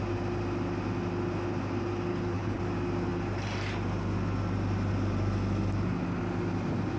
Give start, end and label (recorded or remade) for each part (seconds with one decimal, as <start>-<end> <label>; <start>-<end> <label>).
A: 0.0-2.1 recorded; 2.1-2.6 remade; 2.6-7.0 recorded